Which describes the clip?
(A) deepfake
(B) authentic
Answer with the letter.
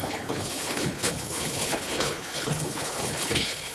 A